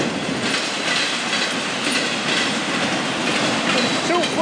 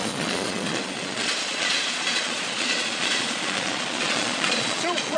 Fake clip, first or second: second